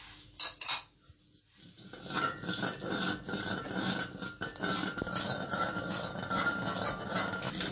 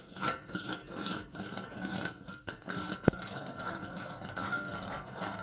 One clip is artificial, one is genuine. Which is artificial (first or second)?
second